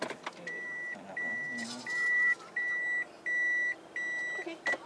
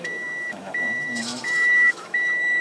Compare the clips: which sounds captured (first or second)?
first